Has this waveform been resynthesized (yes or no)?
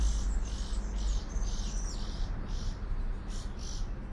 no